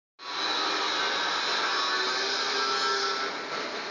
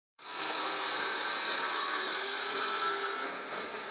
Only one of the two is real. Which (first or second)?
first